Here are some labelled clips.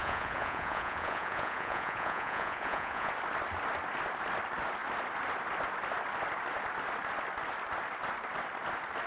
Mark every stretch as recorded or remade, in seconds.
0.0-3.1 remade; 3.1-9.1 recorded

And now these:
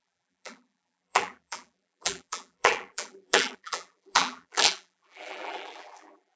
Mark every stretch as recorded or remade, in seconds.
0.0-6.4 remade

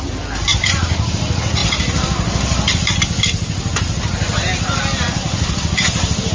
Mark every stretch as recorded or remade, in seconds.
0.0-0.5 recorded; 0.5-1.1 remade; 1.1-1.6 recorded; 1.6-3.0 remade; 3.0-5.2 recorded; 5.2-6.3 remade